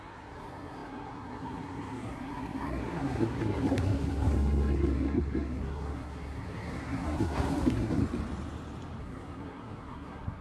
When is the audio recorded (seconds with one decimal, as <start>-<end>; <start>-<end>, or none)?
8.0-9.0